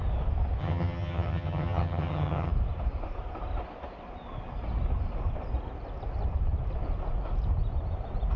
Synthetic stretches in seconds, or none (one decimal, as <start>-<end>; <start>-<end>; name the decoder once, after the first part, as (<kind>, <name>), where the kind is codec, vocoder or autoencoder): 0.6-2.5 (vocoder, HiFi-GAN)